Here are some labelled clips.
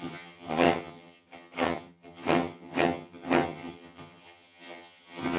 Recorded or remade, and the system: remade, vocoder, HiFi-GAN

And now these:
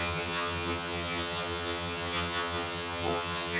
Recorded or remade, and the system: remade, vocoder, HiFi-GAN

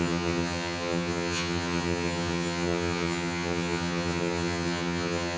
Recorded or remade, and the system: remade, vocoder, HiFi-GAN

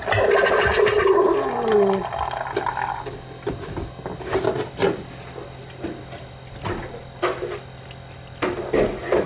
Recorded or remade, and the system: recorded